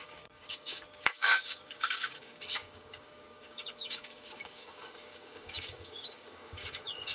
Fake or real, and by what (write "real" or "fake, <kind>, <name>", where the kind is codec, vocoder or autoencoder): fake, codec, DAC